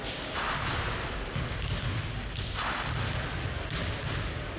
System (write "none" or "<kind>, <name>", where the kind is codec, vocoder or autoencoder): none